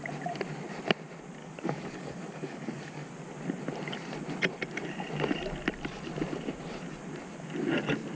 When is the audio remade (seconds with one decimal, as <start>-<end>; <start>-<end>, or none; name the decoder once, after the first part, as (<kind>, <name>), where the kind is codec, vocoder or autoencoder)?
1.4-3.1 (codec, DAC)